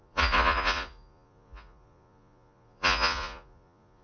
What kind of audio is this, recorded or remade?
remade